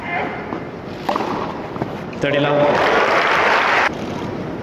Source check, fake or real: real